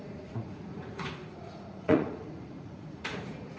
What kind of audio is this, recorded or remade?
remade